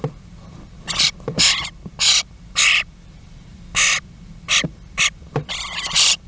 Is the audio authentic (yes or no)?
no